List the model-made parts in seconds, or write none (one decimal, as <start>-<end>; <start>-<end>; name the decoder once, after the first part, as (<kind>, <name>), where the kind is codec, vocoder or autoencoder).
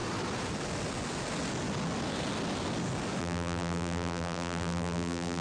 3.2-5.4 (vocoder, BigVGAN v2)